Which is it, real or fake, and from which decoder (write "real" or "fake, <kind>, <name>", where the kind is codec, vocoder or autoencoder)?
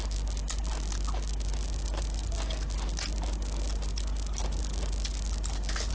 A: real